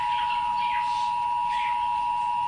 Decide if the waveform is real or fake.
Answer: real